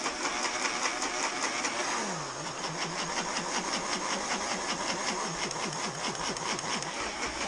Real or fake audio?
real